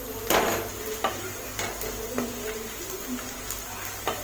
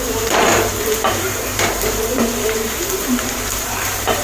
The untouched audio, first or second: first